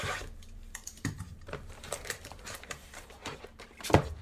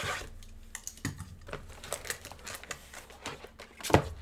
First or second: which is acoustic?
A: second